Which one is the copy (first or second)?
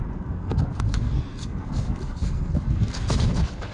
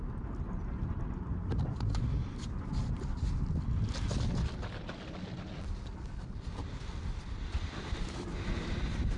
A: first